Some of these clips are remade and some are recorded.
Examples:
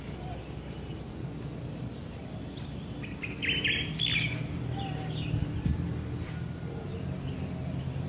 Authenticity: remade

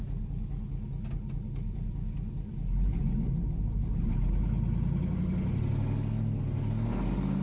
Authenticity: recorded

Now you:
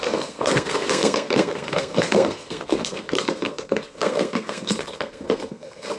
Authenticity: remade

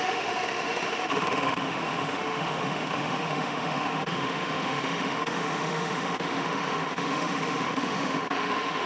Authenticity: remade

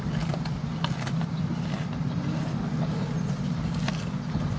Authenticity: recorded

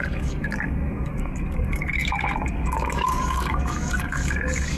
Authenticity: remade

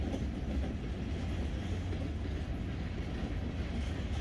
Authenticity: recorded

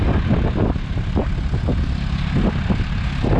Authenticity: recorded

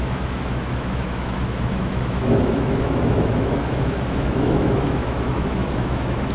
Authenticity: remade